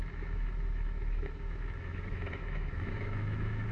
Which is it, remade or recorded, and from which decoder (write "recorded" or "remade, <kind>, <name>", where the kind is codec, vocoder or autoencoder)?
remade, autoencoder, DAC-VAE